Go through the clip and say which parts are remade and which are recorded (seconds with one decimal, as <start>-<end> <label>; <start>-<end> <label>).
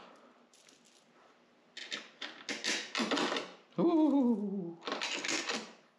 0.0-6.0 recorded